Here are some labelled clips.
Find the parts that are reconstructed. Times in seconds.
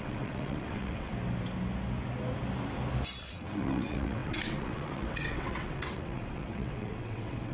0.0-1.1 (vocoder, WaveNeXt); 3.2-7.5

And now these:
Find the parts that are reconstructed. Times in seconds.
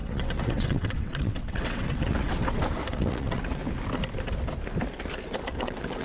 0.0-2.3 (vocoder, WaveNeXt); 2.9-3.6; 5.6-6.0